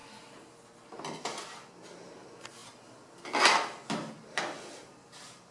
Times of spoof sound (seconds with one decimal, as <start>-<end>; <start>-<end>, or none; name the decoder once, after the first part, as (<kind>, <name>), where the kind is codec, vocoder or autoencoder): none

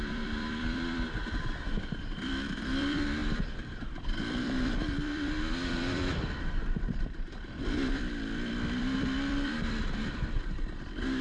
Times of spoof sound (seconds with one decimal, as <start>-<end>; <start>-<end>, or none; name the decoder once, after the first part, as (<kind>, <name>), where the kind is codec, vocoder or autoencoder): 0.0-11.2 (vocoder, BigVGAN v2)

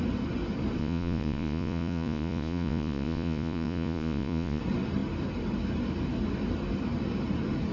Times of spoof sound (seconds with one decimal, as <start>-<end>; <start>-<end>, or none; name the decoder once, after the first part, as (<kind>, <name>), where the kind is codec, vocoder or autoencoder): 0.8-4.6 (vocoder, Vocos)